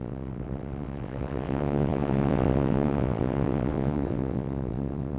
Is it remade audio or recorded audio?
remade